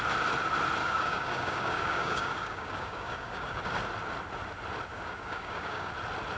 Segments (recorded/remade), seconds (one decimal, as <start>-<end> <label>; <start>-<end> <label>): 0.0-0.8 recorded; 0.8-3.6 remade; 3.6-4.9 recorded; 4.9-5.9 remade; 5.9-6.4 recorded